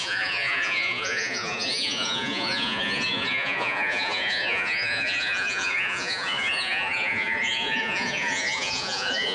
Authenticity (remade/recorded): remade